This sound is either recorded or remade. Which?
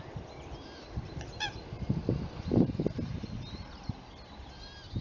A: recorded